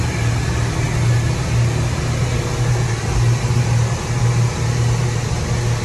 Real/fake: real